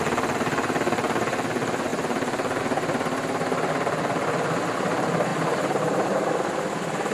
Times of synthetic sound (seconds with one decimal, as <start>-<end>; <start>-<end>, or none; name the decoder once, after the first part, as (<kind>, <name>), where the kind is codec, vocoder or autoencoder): 1.9-2.6 (vocoder, BigVGAN v2)

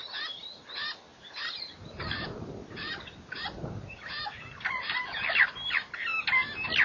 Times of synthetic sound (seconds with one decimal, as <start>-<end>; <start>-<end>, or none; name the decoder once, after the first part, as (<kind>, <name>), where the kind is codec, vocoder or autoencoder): 0.0-0.6 (vocoder, BigVGAN v2); 1.1-5.2

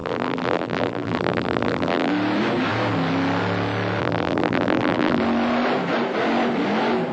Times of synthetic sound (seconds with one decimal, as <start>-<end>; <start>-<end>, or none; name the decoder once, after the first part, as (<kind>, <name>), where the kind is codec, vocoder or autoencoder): 0.0-2.1 (vocoder, BigVGAN v2); 4.0-5.2